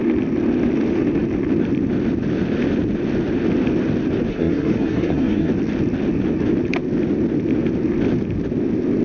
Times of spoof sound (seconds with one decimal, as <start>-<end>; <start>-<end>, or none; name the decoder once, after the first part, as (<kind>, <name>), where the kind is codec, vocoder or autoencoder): 4.3-5.5 (codec, SNAC)